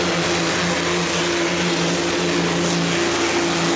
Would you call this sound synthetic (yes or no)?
no